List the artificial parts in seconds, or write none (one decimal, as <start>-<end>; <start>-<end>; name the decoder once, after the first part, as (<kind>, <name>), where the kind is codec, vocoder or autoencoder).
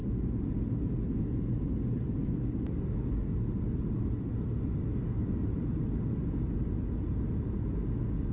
none